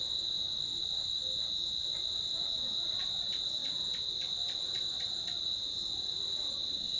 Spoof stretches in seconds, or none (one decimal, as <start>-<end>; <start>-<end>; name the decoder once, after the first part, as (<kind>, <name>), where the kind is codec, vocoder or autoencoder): none